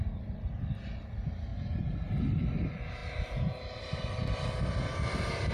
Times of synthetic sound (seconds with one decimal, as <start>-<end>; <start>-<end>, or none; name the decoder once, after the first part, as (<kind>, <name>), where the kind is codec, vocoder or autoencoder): 1.5-2.2 (vocoder, BigVGAN v2)